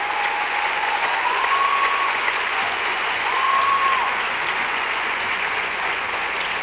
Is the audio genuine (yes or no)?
no